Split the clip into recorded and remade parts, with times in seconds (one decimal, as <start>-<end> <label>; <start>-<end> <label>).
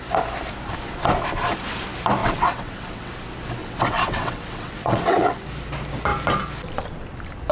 0.0-2.2 recorded; 2.2-3.1 remade; 3.1-3.6 recorded; 3.6-5.3 remade; 5.3-7.5 recorded